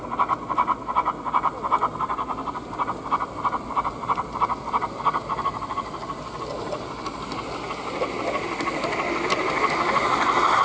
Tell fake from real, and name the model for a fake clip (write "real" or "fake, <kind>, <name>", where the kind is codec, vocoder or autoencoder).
real